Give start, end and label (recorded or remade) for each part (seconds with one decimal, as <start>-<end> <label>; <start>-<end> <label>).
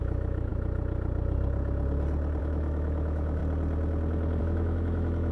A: 0.0-0.5 remade; 0.5-2.4 recorded; 2.4-3.4 remade; 3.4-4.4 recorded; 4.4-5.3 remade